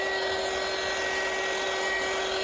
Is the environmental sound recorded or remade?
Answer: recorded